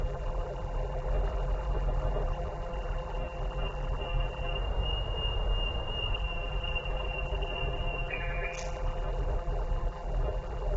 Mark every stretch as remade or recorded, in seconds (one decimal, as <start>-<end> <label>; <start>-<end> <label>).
0.0-4.6 remade; 4.6-6.1 recorded; 6.1-10.8 remade